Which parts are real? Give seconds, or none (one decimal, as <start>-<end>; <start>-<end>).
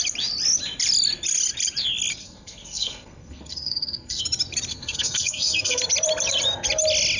0.0-2.2; 4.2-4.7; 5.8-7.2